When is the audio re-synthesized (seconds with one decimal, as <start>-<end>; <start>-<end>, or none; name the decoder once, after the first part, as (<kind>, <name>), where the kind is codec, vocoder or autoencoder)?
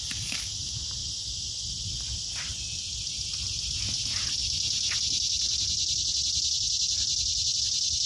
none